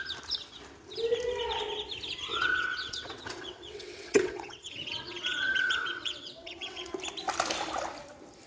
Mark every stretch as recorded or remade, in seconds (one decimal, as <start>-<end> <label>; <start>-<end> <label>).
0.0-2.3 recorded; 2.3-6.9 remade; 6.9-8.5 recorded